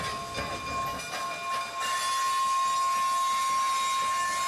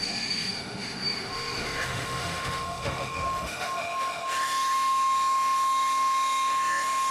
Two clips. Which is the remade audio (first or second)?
second